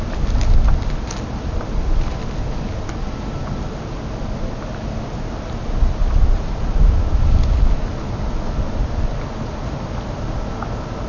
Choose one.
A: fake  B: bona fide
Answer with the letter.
B